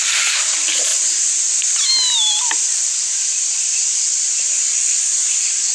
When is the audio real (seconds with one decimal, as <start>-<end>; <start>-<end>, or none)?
0.0-5.7